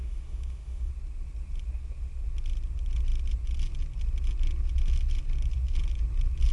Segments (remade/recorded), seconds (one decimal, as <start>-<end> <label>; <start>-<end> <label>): 0.0-0.9 remade; 0.9-6.5 recorded